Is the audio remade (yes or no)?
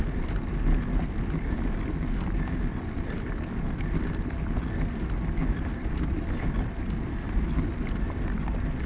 no